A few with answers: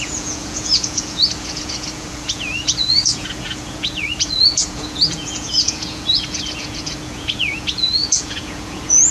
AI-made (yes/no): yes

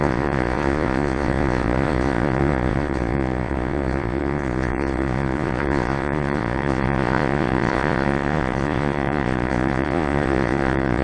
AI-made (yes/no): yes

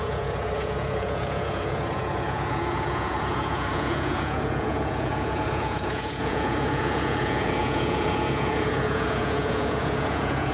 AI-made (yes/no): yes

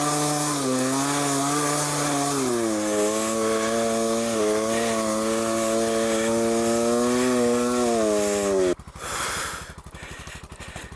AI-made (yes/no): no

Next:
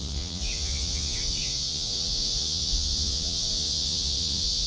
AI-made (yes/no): yes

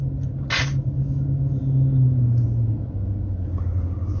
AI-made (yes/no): no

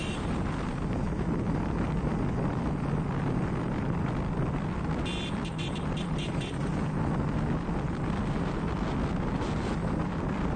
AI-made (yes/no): no